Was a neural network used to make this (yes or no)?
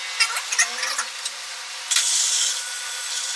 no